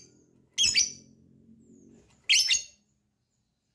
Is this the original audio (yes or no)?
yes